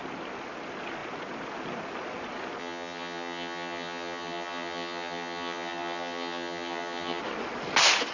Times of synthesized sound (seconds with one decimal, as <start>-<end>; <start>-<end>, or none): 2.6-7.2